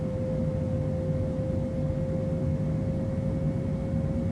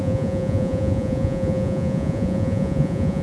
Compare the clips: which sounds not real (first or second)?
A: second